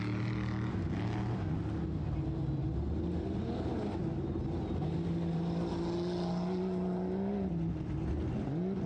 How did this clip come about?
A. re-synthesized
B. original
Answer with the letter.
B